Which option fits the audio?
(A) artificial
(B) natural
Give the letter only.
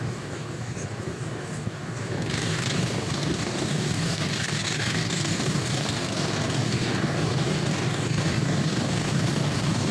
A